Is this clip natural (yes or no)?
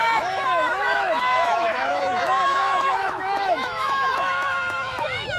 no